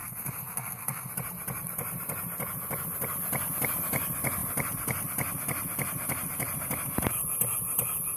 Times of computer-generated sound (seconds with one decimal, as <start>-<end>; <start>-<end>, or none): 0.0-1.1